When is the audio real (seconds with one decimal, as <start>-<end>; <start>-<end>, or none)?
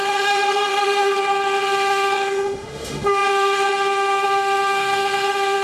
none